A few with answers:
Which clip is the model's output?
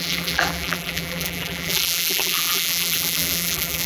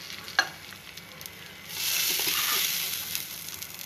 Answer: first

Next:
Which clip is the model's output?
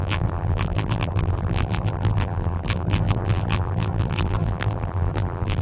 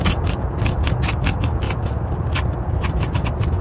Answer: first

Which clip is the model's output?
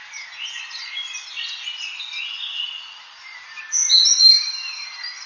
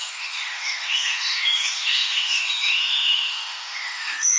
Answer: second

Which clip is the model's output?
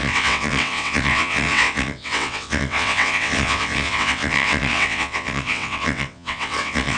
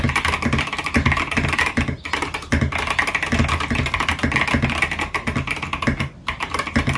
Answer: first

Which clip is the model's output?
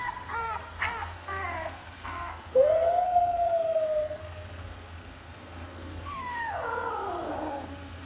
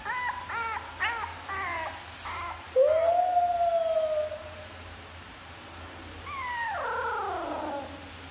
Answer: first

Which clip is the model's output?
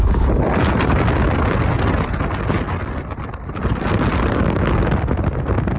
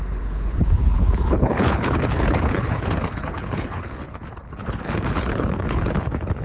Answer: second